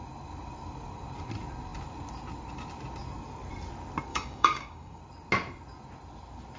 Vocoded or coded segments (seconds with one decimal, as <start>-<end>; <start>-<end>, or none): 4.1-5.0